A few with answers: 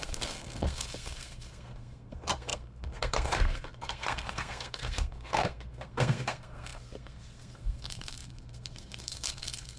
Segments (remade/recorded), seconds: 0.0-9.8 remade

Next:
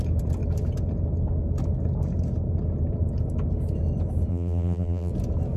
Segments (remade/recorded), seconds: 0.0-4.3 recorded; 4.3-5.1 remade; 5.1-5.6 recorded

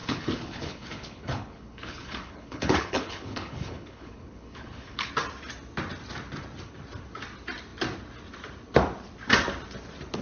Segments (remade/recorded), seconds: 0.0-5.1 remade; 5.1-10.2 recorded

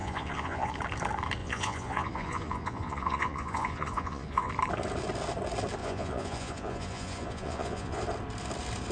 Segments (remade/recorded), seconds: 0.0-0.7 remade; 0.7-1.4 recorded; 1.4-4.5 remade; 4.5-5.8 recorded; 5.8-8.0 remade; 8.0-8.9 recorded